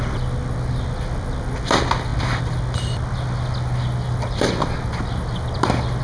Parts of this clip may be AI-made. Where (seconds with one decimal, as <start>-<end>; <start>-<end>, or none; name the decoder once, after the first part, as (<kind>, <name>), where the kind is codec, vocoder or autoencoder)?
none